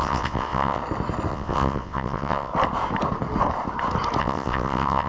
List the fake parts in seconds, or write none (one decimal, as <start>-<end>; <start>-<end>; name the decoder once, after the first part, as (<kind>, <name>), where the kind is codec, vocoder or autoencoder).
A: 0.0-0.8 (vocoder, WaveNeXt); 1.3-2.5; 4.2-5.1